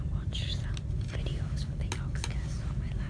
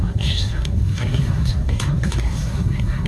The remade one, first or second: second